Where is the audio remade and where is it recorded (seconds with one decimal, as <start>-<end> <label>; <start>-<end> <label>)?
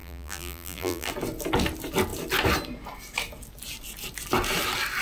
0.0-1.1 remade; 1.1-5.0 recorded